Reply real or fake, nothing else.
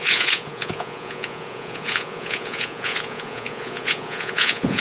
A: fake